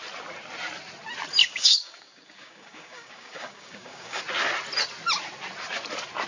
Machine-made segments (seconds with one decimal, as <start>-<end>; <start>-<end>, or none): 1.4-4.2